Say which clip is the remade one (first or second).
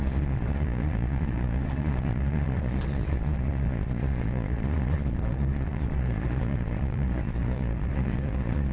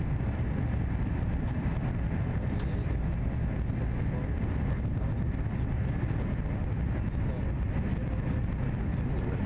first